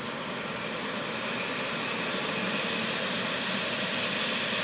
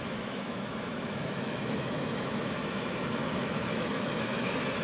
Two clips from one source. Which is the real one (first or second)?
first